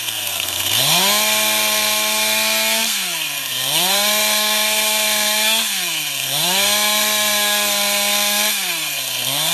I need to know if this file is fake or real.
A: fake